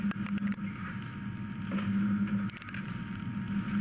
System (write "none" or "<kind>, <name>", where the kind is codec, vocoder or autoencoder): none